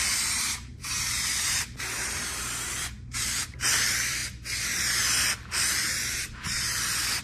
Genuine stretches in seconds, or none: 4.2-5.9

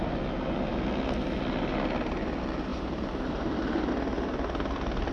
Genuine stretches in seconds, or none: 0.0-2.7; 3.9-5.1

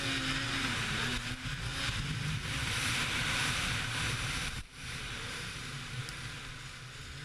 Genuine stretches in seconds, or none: 0.0-1.7; 6.0-7.2

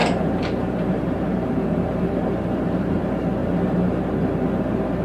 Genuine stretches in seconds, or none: 3.0-3.4; 4.0-5.0

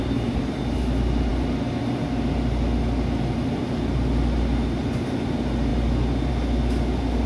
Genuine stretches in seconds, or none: 0.0-7.3